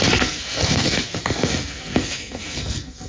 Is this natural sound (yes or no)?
no